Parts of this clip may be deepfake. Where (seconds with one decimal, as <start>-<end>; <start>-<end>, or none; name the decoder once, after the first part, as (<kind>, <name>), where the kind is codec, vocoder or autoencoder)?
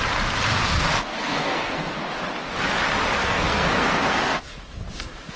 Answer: 1.1-2.0 (codec, SNAC); 3.2-4.6